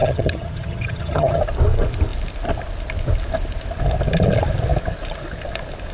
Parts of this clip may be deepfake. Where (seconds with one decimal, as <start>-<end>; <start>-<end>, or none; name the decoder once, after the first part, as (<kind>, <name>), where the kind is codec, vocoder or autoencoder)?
0.0-1.4 (vocoder, HiFi-GAN)